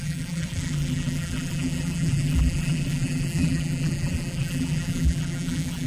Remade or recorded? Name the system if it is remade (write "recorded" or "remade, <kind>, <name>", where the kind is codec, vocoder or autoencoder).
remade, vocoder, BigVGAN v2